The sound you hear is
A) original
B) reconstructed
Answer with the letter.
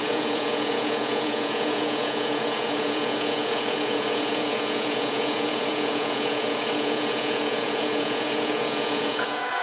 B